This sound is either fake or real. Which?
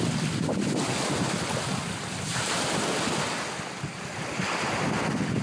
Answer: real